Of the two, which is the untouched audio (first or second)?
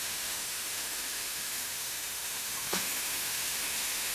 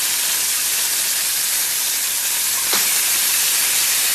second